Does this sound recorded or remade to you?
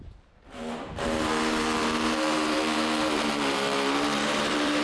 remade